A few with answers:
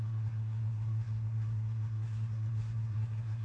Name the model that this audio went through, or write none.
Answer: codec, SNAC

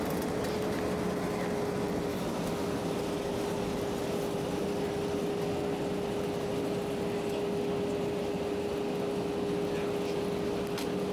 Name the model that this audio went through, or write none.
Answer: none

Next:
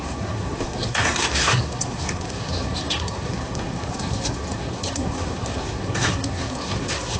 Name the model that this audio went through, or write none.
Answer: codec, SNAC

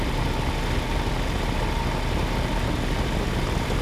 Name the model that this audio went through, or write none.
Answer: none